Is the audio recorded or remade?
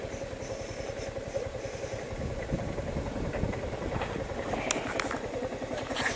remade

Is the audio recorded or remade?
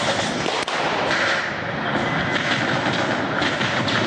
recorded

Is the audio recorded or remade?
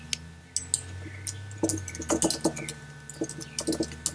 recorded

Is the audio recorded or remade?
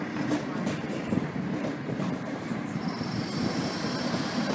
remade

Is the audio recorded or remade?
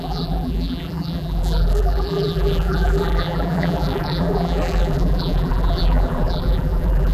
remade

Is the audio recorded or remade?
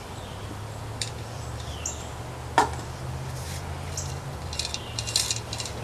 remade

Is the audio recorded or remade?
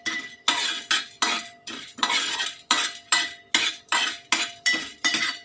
remade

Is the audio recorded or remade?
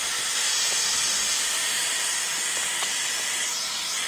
recorded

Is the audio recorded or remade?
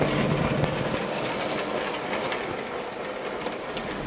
recorded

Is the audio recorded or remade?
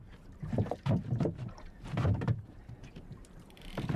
remade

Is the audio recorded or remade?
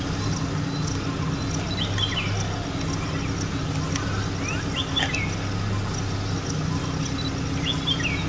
recorded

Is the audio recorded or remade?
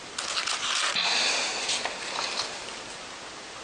recorded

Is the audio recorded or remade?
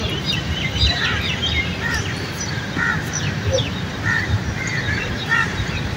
remade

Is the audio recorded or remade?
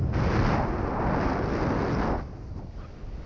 recorded